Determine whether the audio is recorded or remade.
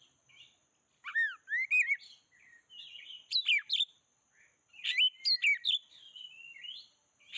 recorded